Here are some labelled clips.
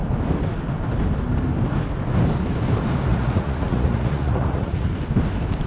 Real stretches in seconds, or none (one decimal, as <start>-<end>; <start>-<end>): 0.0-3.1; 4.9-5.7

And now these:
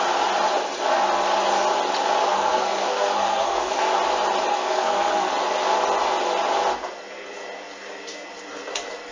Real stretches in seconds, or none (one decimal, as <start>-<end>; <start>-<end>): 0.0-2.2; 3.7-4.5; 5.3-9.1

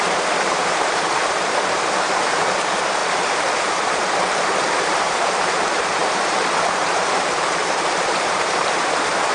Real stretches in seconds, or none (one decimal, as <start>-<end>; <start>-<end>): none

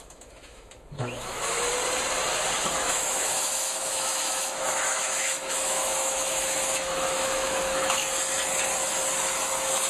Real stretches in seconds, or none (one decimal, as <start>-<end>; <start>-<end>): 1.7-2.6; 8.0-9.9

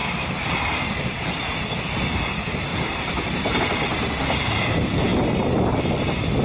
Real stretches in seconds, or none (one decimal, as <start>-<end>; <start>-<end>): 1.6-2.7; 3.6-6.4

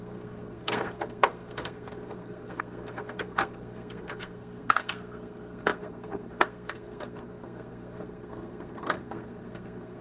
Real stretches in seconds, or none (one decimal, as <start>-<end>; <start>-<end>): none

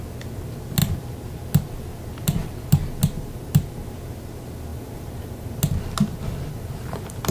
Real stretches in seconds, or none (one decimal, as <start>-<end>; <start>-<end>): 0.0-4.7; 5.5-7.3

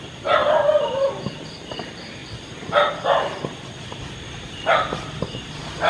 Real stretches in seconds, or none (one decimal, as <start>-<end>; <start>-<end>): 0.0-2.2